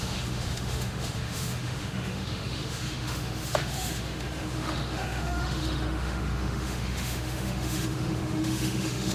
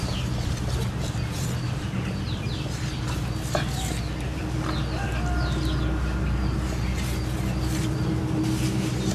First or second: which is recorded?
second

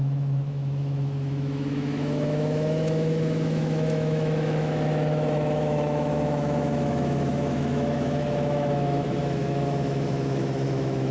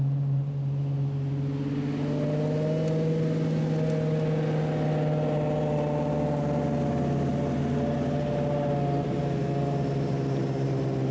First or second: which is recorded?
second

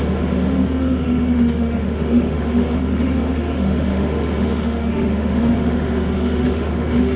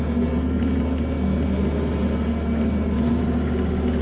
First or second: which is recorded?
second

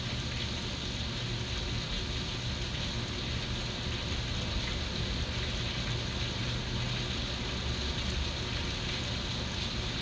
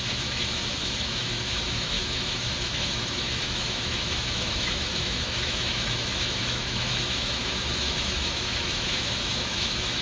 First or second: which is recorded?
first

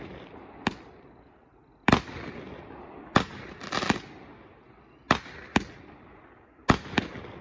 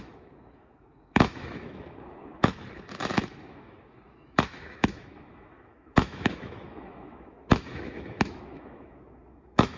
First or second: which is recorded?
first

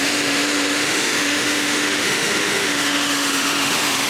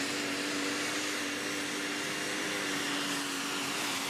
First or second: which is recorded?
second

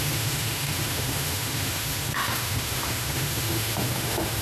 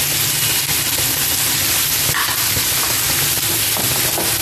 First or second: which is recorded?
second